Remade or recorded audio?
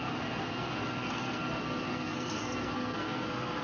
remade